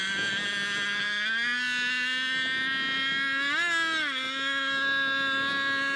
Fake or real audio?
real